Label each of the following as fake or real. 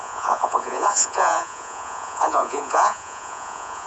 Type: fake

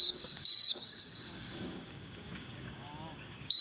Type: fake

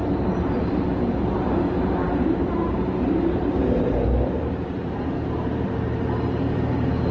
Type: fake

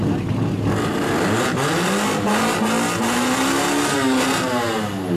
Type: real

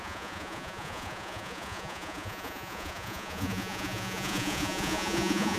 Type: fake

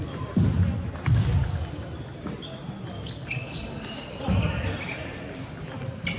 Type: real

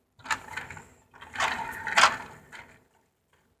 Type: real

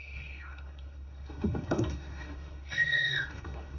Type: fake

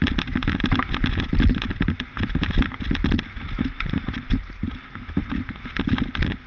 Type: real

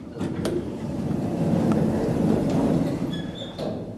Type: fake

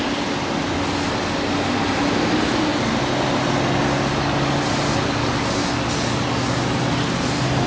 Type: real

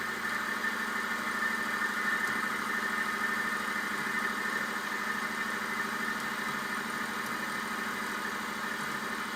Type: real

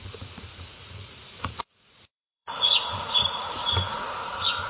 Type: fake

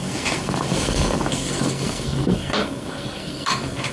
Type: fake